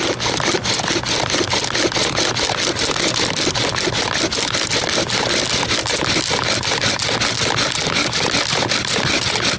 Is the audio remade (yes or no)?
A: no